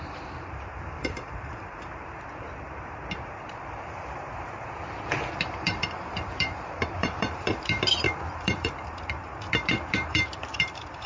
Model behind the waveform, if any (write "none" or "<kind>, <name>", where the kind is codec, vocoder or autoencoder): vocoder, BigVGAN v2